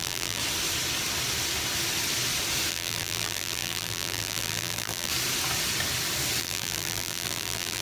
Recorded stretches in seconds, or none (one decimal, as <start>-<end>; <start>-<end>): 0.4-2.7; 5.1-6.4